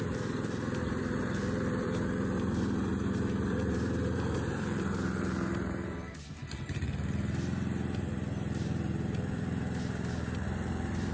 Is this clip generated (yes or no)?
yes